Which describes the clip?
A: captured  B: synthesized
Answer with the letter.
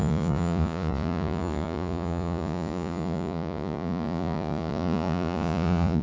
B